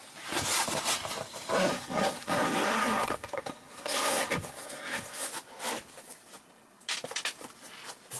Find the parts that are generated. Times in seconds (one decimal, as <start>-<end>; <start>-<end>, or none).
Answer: 1.7-5.3